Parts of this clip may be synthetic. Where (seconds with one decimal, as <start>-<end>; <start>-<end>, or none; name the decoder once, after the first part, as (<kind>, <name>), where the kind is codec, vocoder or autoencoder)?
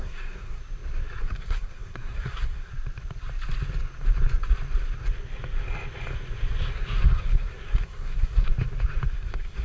0.0-0.6 (codec, SNAC); 1.2-2.7; 6.7-8.5; 9.1-9.6